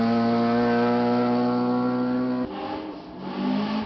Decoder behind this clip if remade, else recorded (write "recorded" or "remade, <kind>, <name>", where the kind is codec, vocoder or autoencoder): recorded